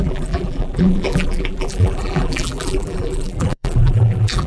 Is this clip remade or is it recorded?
remade